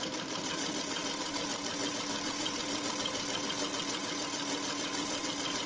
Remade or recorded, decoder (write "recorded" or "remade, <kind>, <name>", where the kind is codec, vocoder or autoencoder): recorded